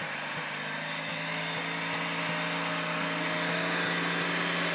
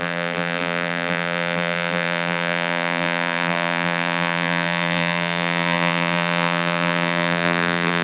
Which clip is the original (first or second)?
first